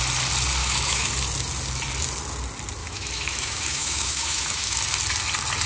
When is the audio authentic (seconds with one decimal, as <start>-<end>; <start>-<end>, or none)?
0.0-0.6; 1.1-2.8; 4.8-5.7